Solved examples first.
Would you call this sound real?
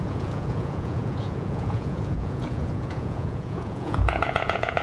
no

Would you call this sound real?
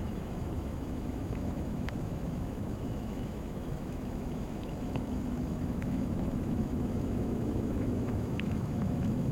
no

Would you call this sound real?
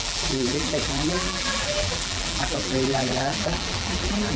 no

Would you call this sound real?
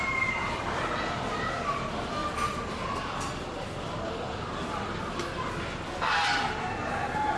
yes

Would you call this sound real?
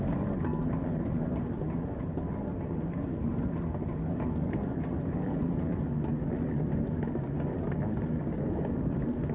yes